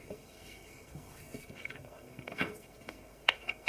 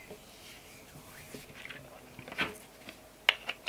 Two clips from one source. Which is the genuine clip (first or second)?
second